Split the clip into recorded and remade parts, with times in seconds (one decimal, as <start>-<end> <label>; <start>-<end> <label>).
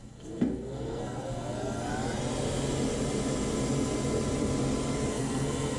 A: 0.0-1.9 remade; 1.9-5.1 recorded; 5.1-5.8 remade